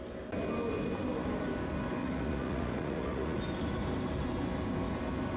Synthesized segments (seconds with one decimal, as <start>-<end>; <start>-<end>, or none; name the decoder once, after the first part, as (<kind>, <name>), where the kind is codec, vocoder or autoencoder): 2.0-3.4 (vocoder, Vocos)